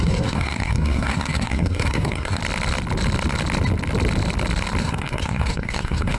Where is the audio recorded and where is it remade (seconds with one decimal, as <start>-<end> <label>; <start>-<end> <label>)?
0.0-2.4 remade; 2.4-4.8 recorded; 4.8-6.2 remade